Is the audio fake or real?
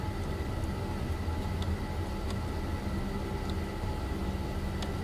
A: real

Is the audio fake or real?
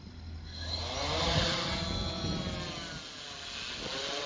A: real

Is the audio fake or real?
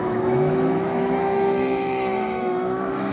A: fake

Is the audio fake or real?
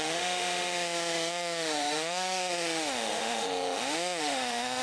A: fake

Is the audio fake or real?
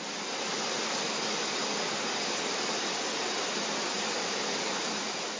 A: real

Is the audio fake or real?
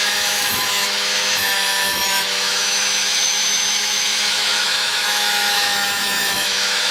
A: fake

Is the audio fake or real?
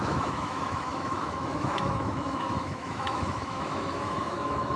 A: fake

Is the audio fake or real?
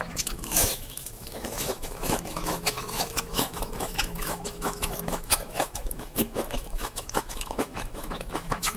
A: fake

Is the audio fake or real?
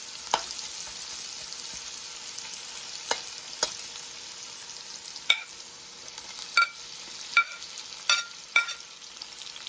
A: real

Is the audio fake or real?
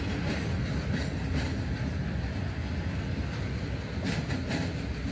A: real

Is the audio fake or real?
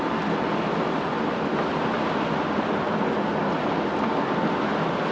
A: real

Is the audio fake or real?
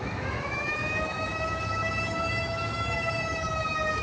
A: fake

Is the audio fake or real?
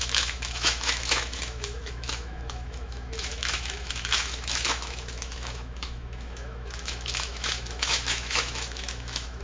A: fake